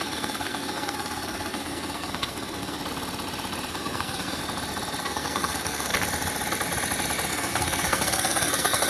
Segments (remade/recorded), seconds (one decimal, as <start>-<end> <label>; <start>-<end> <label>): 0.0-2.8 remade; 2.8-3.7 recorded; 3.7-4.4 remade; 4.4-5.0 recorded; 5.0-5.9 remade; 5.9-7.3 recorded; 7.3-8.9 remade